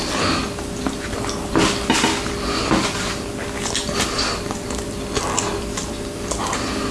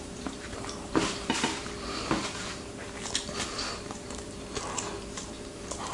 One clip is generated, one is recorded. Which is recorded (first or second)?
first